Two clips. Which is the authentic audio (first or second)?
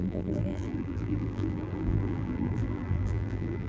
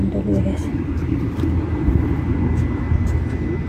second